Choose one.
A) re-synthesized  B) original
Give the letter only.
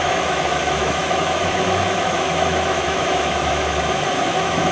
A